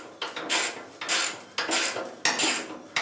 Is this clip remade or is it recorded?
recorded